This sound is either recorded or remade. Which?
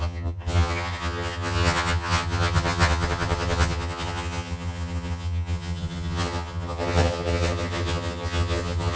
remade